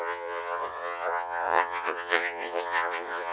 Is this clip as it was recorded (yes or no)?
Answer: no